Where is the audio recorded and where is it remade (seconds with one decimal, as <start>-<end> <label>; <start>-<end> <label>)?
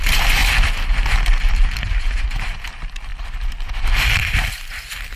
0.0-5.2 remade